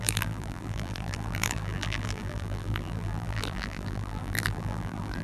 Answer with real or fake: fake